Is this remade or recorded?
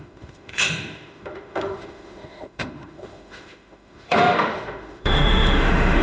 remade